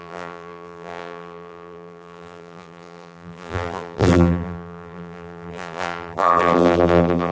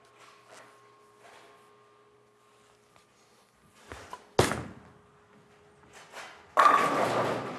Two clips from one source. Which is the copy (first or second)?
first